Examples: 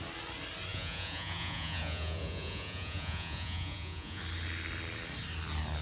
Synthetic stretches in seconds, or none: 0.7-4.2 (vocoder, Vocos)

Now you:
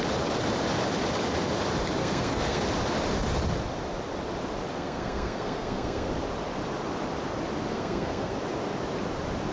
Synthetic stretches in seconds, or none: 2.0-2.6 (codec, SNAC); 4.7-6.1; 7.7-8.4

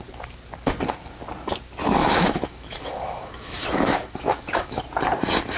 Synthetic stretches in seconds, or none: 2.0-4.8 (autoencoder, DAC-VAE)

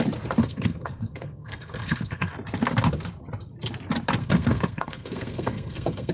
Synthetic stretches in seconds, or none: 0.4-2.3 (codec, SNAC); 4.2-6.1